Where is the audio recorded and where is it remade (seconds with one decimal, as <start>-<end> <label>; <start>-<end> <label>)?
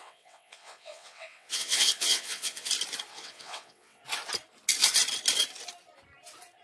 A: 0.0-2.7 remade; 2.7-3.1 recorded; 3.1-4.0 remade; 4.0-6.6 recorded